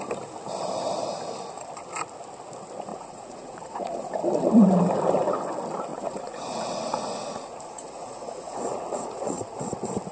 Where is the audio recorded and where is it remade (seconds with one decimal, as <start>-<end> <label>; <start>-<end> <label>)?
0.0-2.9 recorded; 2.9-4.1 remade; 4.1-5.9 recorded; 5.9-9.7 remade; 9.7-10.1 recorded

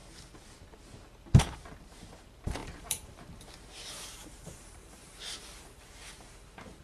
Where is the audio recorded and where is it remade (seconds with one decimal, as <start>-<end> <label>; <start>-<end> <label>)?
0.0-1.4 recorded; 1.4-6.8 remade

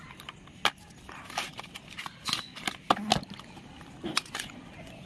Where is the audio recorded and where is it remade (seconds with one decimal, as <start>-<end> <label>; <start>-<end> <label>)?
0.0-4.1 recorded; 4.1-5.1 remade

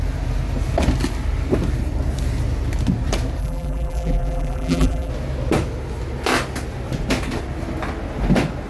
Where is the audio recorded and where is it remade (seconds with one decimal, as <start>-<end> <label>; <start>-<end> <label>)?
0.0-3.4 recorded; 3.4-5.1 remade; 5.1-8.7 recorded